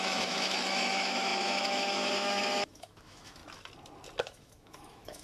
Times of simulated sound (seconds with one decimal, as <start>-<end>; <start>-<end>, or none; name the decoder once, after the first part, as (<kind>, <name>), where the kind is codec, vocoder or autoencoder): 0.0-3.4 (autoencoder, DAC-VAE); 4.2-5.2